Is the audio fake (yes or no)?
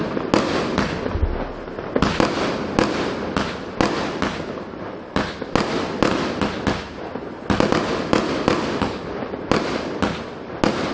no